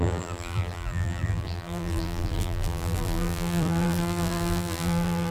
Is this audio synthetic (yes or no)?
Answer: yes